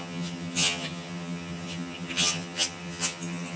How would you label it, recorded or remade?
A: remade